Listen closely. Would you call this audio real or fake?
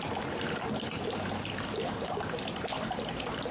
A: real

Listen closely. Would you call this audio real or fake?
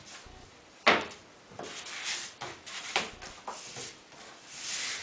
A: real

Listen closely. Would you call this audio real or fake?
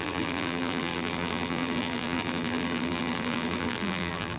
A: fake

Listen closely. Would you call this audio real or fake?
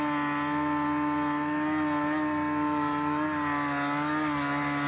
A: real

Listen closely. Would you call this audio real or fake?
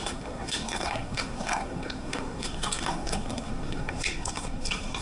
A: fake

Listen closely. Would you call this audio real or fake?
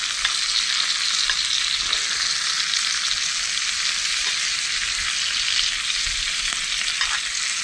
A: real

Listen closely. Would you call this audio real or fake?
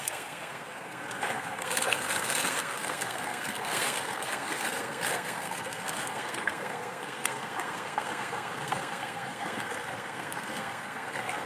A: fake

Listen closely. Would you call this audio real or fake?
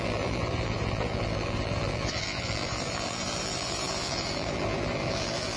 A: fake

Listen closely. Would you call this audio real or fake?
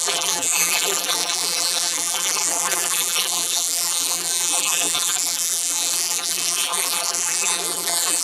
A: fake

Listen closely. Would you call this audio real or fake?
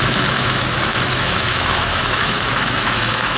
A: fake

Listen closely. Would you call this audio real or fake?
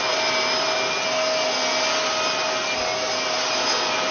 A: real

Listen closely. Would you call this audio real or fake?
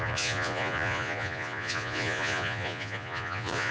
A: fake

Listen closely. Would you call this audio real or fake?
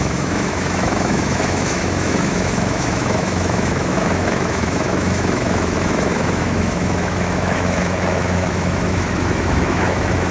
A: fake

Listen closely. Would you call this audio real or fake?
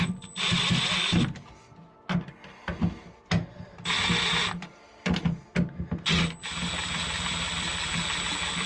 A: real